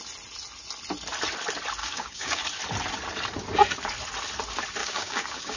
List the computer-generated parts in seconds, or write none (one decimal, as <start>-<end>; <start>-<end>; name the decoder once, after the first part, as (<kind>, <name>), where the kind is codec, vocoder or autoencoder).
1.8-2.4 (codec, DAC); 4.8-5.6